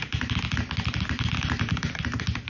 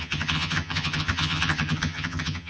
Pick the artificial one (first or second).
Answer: second